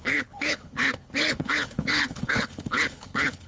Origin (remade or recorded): remade